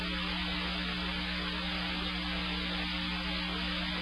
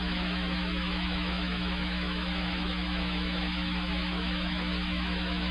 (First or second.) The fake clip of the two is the second